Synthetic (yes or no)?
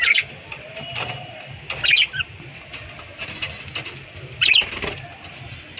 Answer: no